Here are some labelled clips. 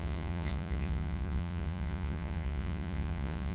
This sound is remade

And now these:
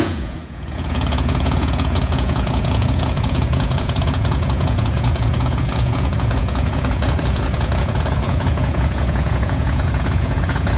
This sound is remade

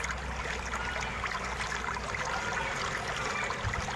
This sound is recorded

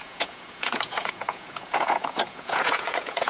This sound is remade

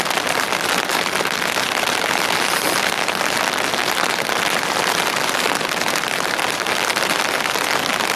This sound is recorded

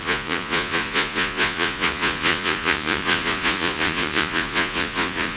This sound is remade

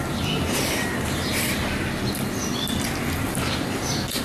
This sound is recorded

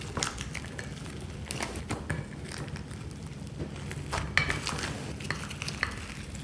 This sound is recorded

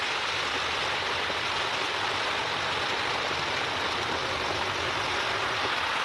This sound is recorded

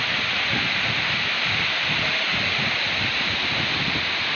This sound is recorded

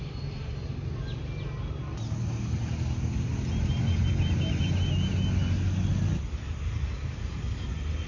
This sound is recorded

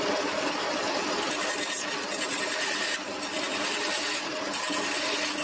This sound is recorded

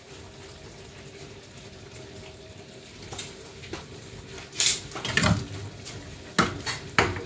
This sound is recorded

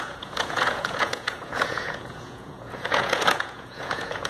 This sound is remade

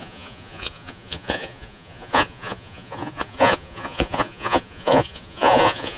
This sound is remade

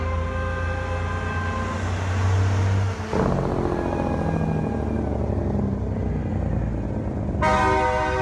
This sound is recorded